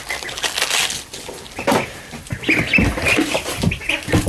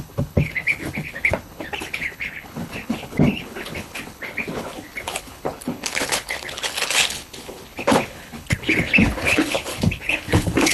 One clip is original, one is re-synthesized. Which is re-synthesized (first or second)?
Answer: second